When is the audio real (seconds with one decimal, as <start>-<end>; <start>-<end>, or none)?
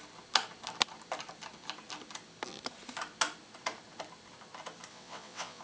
0.0-4.9